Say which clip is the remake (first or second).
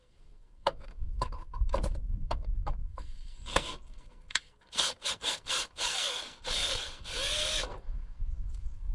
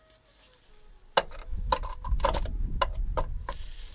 first